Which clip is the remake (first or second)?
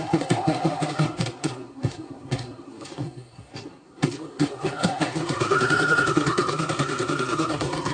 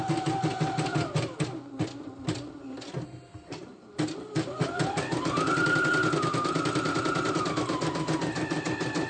first